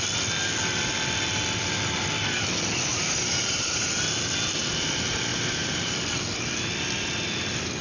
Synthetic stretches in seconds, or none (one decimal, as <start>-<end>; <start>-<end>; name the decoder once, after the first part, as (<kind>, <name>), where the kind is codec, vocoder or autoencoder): 2.9-4.0 (vocoder, BigVGAN v2)